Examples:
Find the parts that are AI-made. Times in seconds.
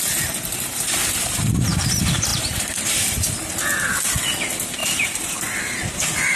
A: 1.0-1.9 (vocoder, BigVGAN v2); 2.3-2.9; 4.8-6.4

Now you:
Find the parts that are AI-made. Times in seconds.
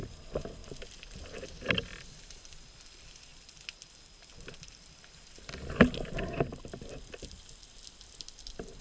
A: none